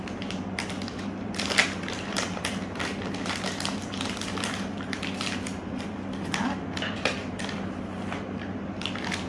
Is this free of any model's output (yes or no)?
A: yes